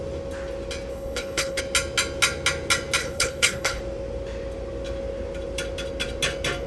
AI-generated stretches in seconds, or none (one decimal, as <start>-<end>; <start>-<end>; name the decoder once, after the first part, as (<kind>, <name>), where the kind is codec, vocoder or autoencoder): 0.9-1.6 (codec, HILCodec); 3.0-3.8